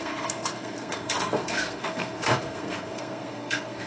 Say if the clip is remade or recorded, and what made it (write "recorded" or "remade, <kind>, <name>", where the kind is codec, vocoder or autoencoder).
remade, codec, SNAC